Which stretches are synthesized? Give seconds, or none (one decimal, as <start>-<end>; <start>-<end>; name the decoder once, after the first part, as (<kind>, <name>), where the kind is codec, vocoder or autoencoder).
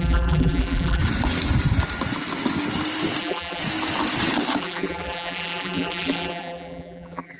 0.0-1.0 (vocoder, BigVGAN v2); 3.2-3.6; 4.6-7.4